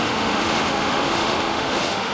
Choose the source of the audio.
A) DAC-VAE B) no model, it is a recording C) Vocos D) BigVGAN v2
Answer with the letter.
A